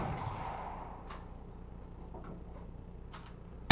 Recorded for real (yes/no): yes